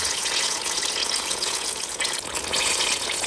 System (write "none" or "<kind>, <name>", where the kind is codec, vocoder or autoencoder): vocoder, Vocos